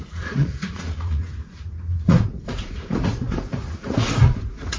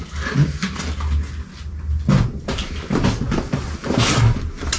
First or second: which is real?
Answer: second